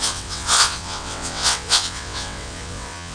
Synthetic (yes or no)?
yes